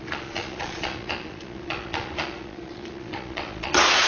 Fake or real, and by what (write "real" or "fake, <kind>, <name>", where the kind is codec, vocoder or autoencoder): fake, vocoder, Vocos